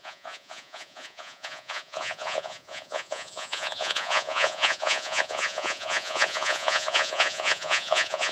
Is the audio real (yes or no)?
no